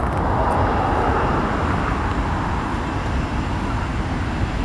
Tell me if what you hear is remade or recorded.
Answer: recorded